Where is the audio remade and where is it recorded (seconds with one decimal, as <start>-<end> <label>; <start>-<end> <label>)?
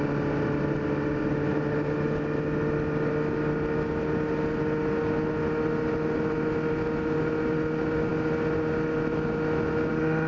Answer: 0.0-10.3 recorded